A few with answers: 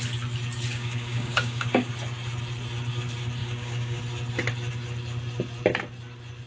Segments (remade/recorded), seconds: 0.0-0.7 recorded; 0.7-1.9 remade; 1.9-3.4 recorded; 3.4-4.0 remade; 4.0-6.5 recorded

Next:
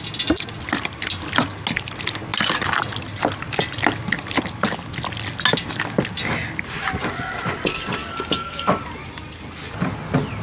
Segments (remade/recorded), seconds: 0.0-8.0 recorded; 8.0-8.8 remade; 8.8-10.4 recorded

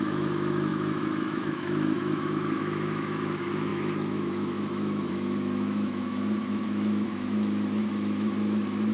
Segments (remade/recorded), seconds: 0.0-8.9 remade

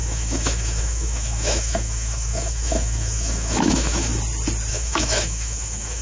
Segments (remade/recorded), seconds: 0.0-4.1 remade; 4.1-4.7 recorded; 4.7-6.0 remade

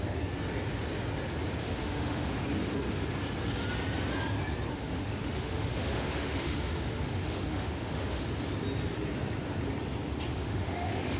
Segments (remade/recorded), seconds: 0.0-1.6 recorded; 1.6-2.4 remade; 2.4-4.7 recorded; 4.7-8.2 remade; 8.2-10.3 recorded; 10.3-11.2 remade

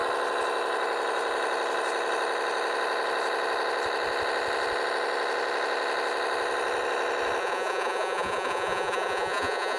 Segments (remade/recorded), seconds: 0.0-7.4 recorded; 7.4-9.8 remade